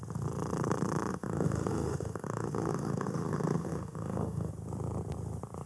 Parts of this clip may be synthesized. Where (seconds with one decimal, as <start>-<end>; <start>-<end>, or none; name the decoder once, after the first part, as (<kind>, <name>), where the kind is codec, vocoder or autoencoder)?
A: 1.1-4.5 (autoencoder, DAC-VAE)